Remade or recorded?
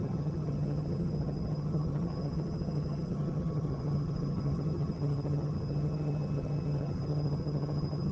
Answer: remade